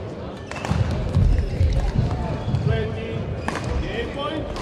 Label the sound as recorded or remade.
recorded